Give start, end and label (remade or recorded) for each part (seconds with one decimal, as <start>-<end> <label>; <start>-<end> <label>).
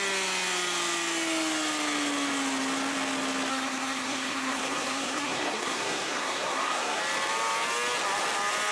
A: 0.0-3.5 recorded; 3.5-7.0 remade; 7.0-8.7 recorded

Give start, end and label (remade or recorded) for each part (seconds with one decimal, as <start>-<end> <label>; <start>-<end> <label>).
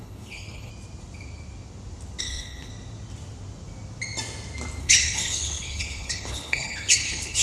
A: 0.0-0.7 remade; 0.7-2.2 recorded; 2.2-2.7 remade; 2.7-4.8 recorded; 4.8-7.4 remade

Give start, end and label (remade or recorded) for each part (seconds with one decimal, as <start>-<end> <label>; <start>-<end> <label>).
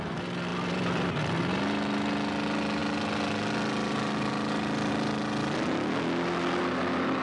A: 0.0-0.5 recorded; 0.5-1.4 remade; 1.4-7.2 recorded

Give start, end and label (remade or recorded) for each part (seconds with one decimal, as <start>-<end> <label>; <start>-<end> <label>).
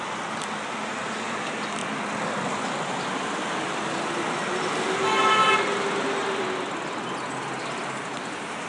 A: 0.0-8.7 recorded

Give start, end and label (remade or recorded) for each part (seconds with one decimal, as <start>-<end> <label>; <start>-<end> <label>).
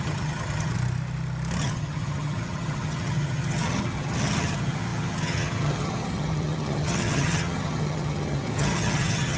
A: 0.0-0.7 remade; 0.7-1.6 recorded; 1.6-9.4 remade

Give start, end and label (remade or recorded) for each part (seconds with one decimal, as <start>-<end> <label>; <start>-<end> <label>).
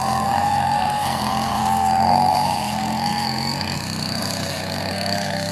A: 0.0-5.5 remade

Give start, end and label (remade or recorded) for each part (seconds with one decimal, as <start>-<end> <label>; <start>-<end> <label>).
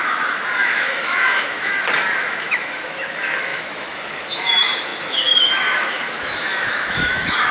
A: 0.0-1.7 remade; 1.7-2.2 recorded; 2.2-7.5 remade